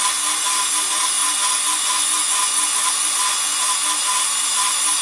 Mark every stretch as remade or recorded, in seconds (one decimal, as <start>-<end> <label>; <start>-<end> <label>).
0.0-1.2 recorded; 1.2-3.7 remade; 3.7-5.0 recorded